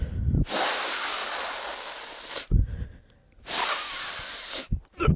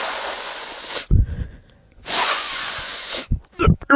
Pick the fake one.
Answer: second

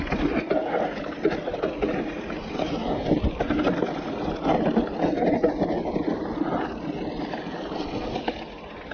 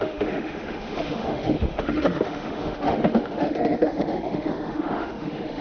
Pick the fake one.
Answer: second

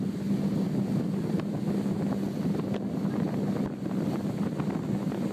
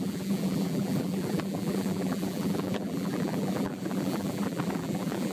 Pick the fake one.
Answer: second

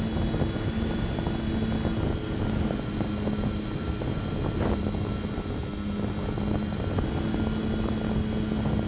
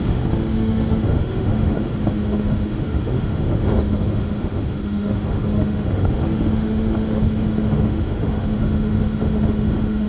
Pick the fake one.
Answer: second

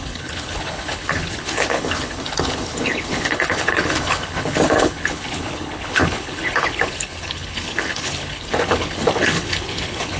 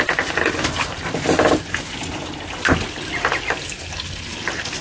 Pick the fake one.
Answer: first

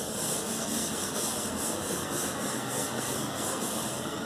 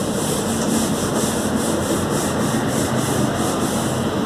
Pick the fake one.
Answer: first